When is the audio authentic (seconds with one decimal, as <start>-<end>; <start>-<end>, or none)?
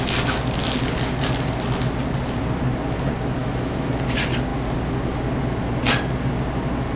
0.0-3.4; 3.9-7.0